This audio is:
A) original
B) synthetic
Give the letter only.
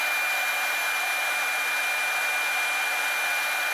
A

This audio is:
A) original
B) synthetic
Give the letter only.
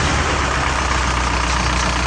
A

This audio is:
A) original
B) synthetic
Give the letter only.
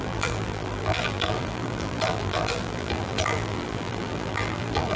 B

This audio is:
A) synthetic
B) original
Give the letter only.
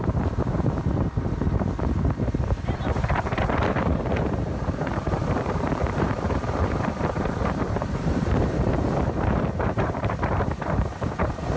A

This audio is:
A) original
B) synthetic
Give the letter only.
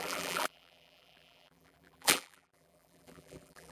B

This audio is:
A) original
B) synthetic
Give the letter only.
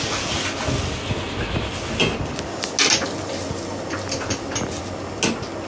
A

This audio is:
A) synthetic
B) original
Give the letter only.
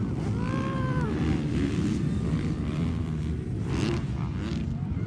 A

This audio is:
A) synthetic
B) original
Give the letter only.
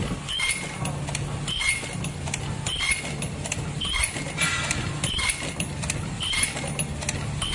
B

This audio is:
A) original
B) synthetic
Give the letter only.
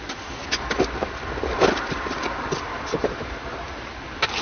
B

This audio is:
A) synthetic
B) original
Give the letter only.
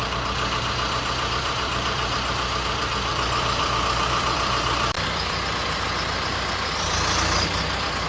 A